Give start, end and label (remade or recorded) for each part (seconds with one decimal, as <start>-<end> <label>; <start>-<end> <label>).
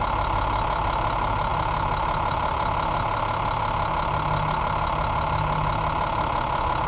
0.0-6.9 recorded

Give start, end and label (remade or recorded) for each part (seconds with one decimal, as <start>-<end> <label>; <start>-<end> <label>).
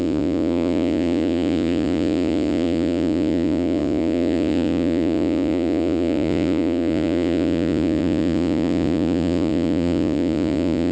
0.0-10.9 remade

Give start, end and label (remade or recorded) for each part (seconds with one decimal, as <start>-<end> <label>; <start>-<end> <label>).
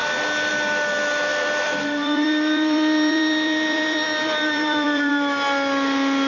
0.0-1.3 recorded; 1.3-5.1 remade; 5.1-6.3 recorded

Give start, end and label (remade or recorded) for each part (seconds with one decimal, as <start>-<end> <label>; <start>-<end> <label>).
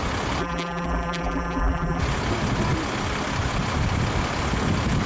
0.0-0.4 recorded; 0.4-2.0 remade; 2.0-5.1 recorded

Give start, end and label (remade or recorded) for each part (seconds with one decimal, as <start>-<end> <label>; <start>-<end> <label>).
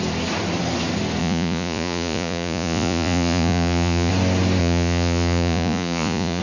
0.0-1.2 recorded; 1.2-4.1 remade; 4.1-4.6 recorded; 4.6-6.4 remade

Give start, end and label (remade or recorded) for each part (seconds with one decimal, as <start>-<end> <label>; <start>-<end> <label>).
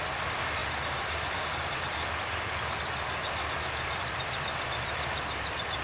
0.0-0.6 remade; 0.6-4.1 recorded; 4.1-5.8 remade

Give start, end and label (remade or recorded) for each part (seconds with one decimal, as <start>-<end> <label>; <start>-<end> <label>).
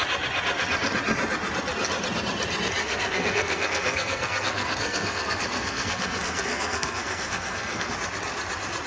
0.0-2.8 recorded; 2.8-7.9 remade; 7.9-8.9 recorded